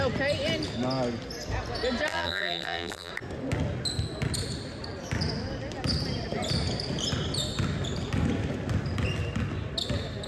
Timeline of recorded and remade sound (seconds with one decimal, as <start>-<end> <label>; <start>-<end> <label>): 0.0-2.1 recorded; 2.1-3.1 remade; 3.1-10.3 recorded